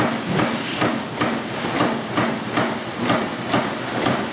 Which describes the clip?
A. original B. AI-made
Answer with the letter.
A